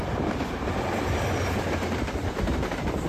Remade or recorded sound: recorded